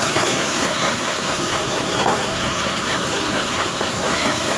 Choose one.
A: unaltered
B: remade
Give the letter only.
B